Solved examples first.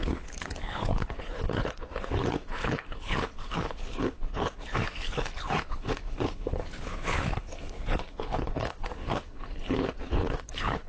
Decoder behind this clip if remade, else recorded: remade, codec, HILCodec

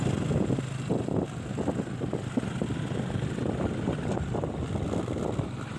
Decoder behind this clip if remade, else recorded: recorded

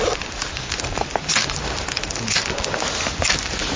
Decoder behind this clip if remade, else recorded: recorded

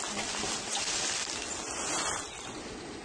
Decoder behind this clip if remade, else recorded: recorded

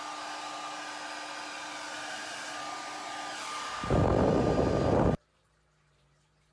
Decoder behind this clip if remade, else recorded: recorded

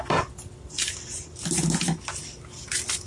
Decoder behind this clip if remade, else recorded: recorded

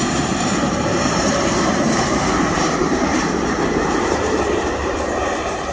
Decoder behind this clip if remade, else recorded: remade, vocoder, BigVGAN v2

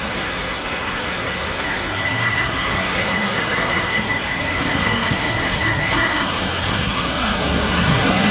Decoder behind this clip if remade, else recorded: remade, codec, SNAC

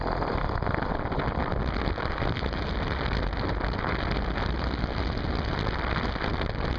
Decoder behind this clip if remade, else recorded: recorded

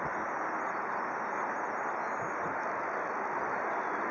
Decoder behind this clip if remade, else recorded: recorded